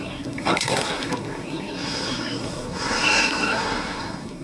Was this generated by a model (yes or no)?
yes